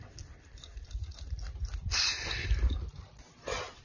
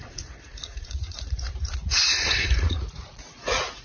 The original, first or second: first